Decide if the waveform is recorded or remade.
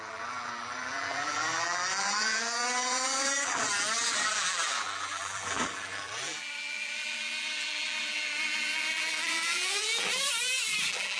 remade